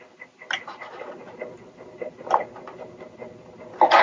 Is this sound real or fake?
real